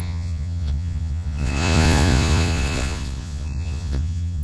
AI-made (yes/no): yes